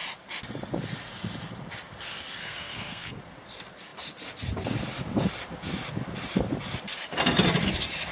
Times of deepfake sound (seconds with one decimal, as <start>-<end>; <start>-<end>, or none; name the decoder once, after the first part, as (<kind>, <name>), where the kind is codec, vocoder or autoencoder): 2.4-3.2 (codec, SNAC)